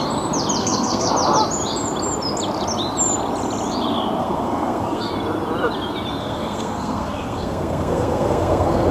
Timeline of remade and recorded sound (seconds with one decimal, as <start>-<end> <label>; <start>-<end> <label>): 0.0-0.6 recorded; 0.6-1.1 remade; 1.1-4.2 recorded; 4.2-5.1 remade; 5.1-6.2 recorded; 6.2-8.9 remade